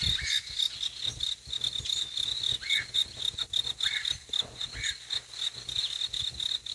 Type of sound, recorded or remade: recorded